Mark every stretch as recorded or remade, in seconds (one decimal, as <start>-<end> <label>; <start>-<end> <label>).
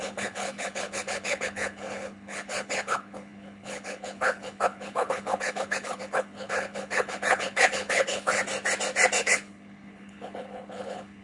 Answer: 0.0-8.4 remade; 8.4-9.2 recorded; 9.2-11.2 remade